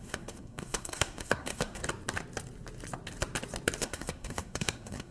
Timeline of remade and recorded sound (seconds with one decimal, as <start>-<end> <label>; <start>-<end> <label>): 0.0-1.8 remade; 1.8-3.8 recorded; 3.8-5.1 remade